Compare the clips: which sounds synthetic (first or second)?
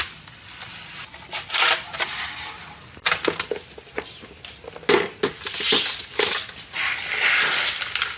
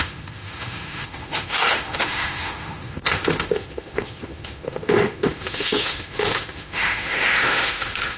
second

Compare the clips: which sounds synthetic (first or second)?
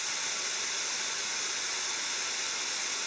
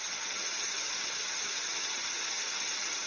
second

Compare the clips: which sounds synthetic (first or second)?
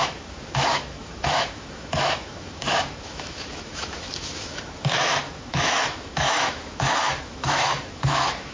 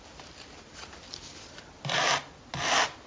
first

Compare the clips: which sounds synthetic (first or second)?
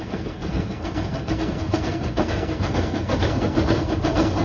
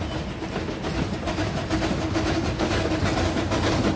first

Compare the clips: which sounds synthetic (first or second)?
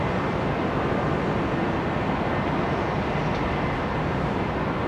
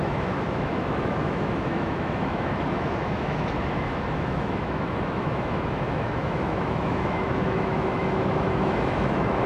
second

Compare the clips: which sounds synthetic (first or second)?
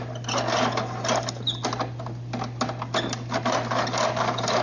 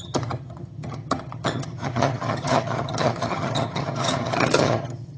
second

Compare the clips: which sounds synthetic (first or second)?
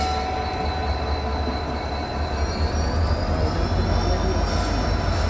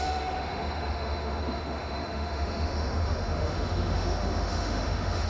second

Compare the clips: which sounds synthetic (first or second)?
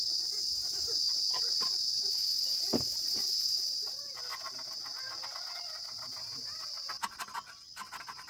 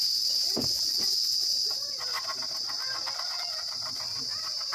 second